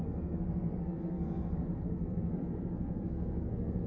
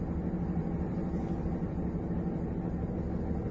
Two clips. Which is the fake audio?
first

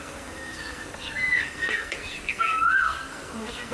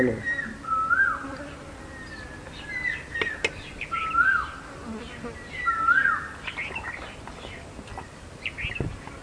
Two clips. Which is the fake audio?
first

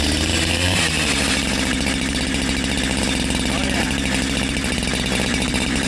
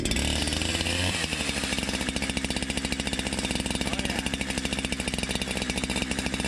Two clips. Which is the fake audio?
first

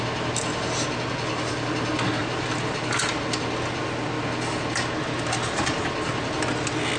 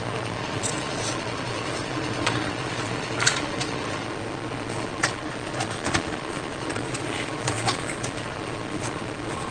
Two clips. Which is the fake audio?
second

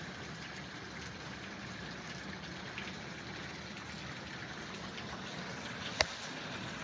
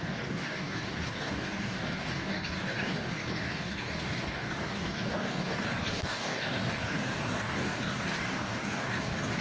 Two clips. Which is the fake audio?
second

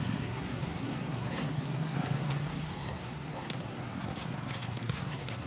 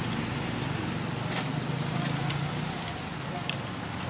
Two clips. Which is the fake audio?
first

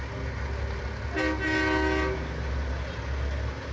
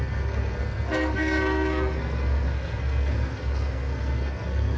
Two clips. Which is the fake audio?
second